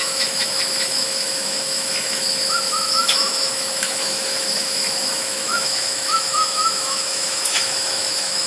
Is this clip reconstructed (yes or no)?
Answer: yes